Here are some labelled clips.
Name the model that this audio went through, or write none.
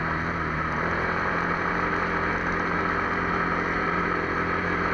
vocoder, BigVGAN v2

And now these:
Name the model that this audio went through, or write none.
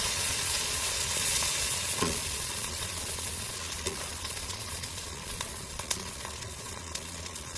vocoder, Vocos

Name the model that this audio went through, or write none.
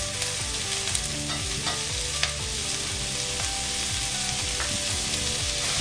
none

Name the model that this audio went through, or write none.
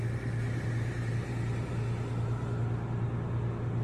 none